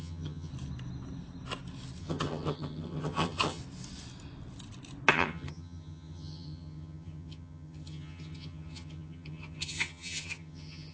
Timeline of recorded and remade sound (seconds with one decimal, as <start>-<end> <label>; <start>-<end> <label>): 0.0-0.5 remade; 0.5-2.0 recorded; 2.0-3.6 remade; 3.6-5.1 recorded; 5.1-10.9 remade